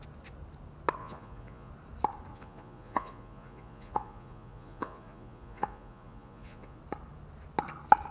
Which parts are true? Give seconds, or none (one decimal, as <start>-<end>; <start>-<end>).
0.0-1.0; 1.7-2.3; 6.8-8.1